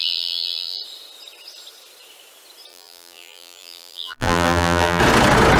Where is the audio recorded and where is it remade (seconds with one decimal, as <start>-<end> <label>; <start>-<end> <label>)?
0.0-0.8 remade; 0.8-2.7 recorded; 2.7-5.0 remade; 5.0-5.6 recorded